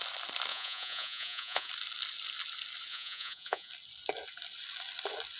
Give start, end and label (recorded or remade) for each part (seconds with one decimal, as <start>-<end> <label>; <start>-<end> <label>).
0.0-0.5 recorded; 0.5-1.7 remade; 1.7-2.9 recorded; 2.9-3.7 remade; 3.7-5.4 recorded